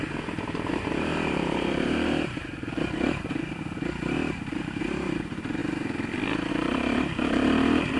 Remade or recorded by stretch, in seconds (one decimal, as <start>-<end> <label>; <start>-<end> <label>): 0.0-5.6 remade; 5.6-6.5 recorded; 6.5-8.0 remade